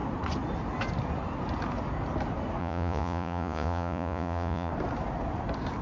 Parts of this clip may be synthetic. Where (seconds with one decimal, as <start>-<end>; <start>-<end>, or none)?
2.6-4.7